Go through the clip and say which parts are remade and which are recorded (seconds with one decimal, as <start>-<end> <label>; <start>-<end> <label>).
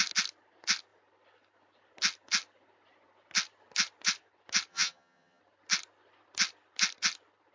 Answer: 0.0-4.7 recorded; 4.7-5.4 remade; 5.4-7.5 recorded